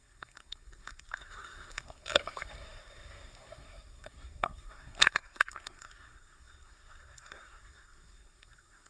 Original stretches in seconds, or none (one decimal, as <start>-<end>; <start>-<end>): none